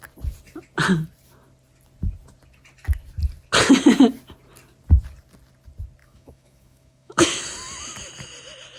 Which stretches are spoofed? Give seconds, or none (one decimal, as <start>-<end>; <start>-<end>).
6.0-7.4